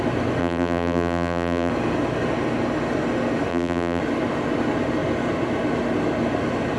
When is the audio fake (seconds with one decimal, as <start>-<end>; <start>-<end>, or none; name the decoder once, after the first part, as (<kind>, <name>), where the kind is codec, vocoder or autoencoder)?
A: 0.4-1.7 (vocoder, BigVGAN v2); 3.5-4.0